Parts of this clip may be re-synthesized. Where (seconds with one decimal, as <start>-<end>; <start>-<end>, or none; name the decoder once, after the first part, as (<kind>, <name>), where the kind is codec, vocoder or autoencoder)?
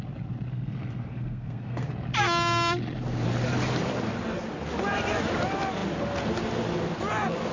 0.5-1.9 (codec, SNAC)